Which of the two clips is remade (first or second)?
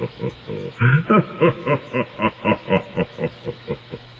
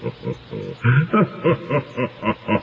first